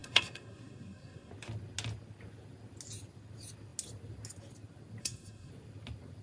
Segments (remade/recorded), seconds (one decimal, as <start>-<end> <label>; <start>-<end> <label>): 0.0-1.3 remade; 1.3-5.0 recorded; 5.0-5.5 remade; 5.5-6.2 recorded